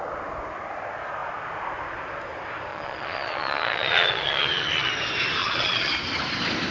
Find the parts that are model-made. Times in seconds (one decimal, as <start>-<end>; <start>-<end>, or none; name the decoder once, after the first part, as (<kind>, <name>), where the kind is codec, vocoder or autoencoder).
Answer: 2.7-4.9 (vocoder, Vocos); 5.4-5.9